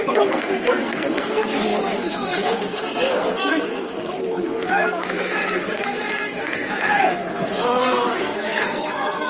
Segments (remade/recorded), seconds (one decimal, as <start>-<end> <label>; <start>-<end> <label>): 0.0-9.3 remade